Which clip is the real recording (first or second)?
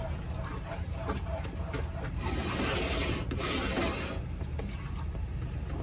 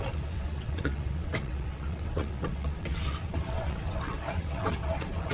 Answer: first